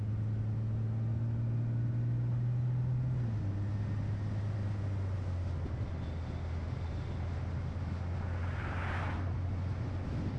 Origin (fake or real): real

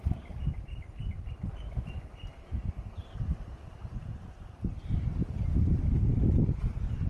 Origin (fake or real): real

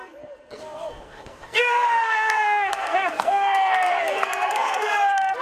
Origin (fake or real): fake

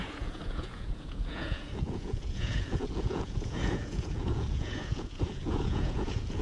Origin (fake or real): fake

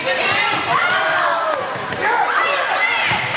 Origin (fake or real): real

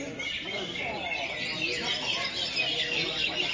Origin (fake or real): real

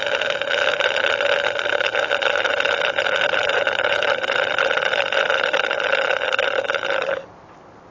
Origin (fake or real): real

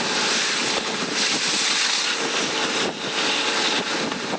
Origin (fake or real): real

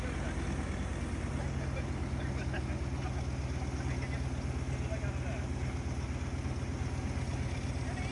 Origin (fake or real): real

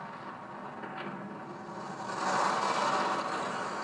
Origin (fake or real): real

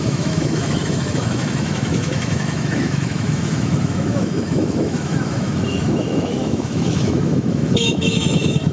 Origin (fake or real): fake